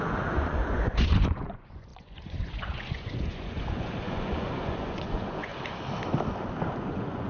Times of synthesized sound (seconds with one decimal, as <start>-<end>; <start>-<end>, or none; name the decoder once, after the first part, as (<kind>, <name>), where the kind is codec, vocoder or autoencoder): 0.0-5.5 (vocoder, Vocos); 6.7-7.3